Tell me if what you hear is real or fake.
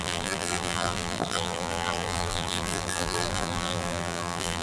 fake